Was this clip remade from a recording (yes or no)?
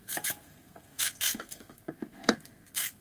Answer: yes